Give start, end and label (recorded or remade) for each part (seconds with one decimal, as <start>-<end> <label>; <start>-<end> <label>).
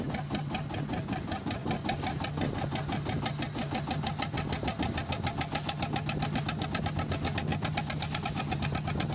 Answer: 0.0-9.1 recorded